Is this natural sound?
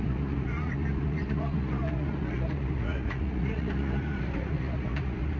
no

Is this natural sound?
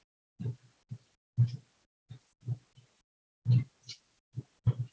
yes